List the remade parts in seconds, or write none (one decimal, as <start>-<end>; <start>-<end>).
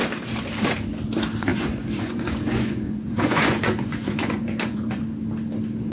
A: 1.5-5.0